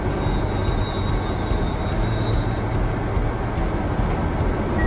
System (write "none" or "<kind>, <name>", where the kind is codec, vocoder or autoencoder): none